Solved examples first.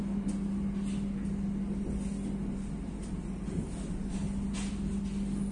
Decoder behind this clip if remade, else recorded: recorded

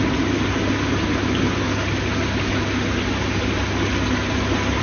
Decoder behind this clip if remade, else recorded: recorded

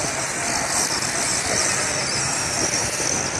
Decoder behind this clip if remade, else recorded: recorded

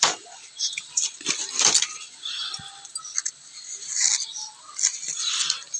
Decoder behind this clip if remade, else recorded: remade, vocoder, BigVGAN v2